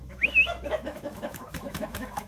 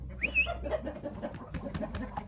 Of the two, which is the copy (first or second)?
first